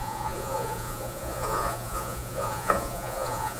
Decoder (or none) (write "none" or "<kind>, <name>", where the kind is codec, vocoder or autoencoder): vocoder, Vocos